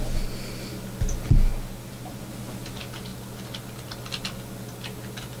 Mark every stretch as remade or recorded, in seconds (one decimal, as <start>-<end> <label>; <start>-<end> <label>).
0.0-5.4 recorded